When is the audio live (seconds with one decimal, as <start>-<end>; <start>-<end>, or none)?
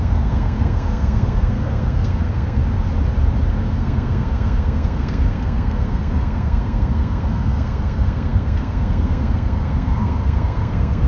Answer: 2.6-3.5